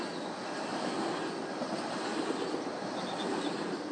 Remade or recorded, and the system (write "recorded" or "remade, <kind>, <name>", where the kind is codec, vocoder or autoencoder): recorded